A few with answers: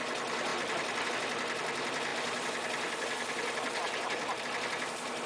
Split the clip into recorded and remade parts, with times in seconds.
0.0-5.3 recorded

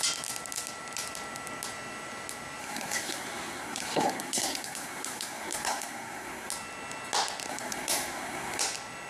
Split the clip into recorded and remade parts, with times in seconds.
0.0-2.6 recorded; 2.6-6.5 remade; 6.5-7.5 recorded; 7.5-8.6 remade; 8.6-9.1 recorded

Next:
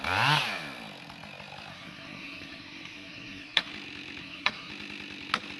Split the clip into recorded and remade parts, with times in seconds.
0.0-1.7 recorded; 1.7-3.7 remade; 3.7-4.2 recorded; 4.2-4.7 remade; 4.7-5.6 recorded

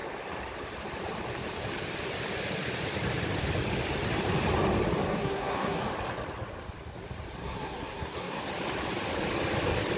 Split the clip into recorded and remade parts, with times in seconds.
0.0-5.1 recorded; 5.1-5.8 remade; 5.8-7.4 recorded; 7.4-8.4 remade; 8.4-10.0 recorded

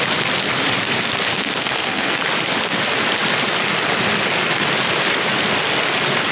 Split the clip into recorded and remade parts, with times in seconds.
0.0-1.3 recorded; 1.3-2.2 remade; 2.2-6.3 recorded

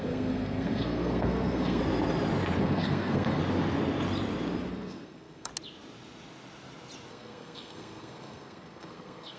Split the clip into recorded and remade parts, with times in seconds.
0.0-1.8 remade; 1.8-2.6 recorded; 2.6-3.4 remade; 3.4-4.7 recorded; 4.7-5.5 remade; 5.5-7.1 recorded; 7.1-9.4 remade